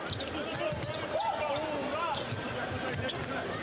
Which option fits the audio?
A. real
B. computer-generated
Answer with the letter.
A